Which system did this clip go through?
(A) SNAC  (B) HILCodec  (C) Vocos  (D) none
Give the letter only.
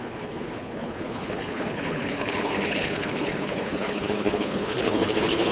B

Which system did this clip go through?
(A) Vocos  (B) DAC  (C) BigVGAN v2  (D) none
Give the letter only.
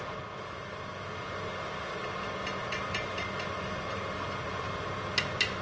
D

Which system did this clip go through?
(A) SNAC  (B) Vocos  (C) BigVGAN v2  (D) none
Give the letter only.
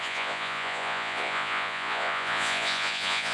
B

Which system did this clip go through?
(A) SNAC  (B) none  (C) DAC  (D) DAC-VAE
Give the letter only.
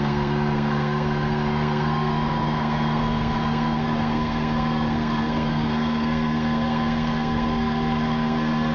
A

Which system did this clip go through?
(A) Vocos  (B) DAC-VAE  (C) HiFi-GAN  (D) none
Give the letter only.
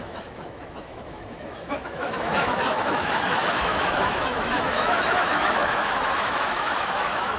B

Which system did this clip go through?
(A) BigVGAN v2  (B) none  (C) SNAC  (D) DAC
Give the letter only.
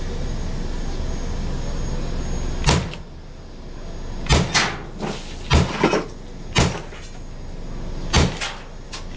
B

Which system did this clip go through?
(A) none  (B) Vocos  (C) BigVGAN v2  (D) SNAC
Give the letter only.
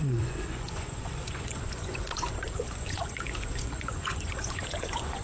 B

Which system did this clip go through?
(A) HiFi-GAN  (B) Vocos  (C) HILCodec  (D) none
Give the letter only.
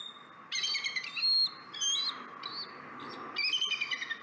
D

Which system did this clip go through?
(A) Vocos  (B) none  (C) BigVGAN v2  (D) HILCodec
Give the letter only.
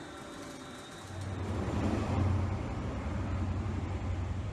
C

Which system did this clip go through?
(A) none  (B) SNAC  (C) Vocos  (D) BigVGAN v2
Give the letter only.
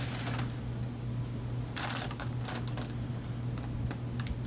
A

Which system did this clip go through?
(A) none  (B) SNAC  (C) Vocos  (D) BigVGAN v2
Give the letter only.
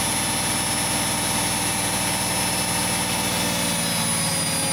A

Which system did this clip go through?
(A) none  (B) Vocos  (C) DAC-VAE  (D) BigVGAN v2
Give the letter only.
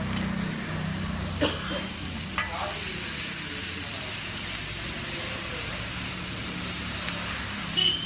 A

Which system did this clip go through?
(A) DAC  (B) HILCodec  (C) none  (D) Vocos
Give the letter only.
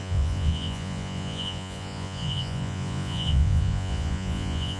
D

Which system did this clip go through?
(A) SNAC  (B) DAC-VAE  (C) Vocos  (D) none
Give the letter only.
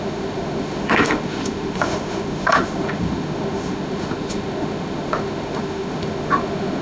B